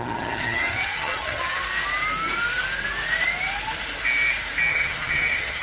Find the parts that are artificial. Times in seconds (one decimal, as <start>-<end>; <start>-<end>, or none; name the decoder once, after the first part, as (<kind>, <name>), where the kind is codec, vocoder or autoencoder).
0.0-1.6 (vocoder, HiFi-GAN); 4.7-5.6